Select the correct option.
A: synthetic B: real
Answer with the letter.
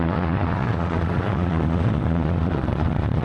A